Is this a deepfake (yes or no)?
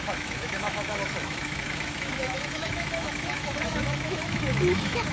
yes